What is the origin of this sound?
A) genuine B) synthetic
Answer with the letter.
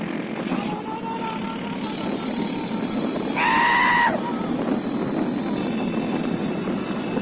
A